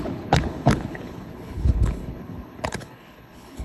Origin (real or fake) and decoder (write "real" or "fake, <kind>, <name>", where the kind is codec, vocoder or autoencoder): fake, codec, HILCodec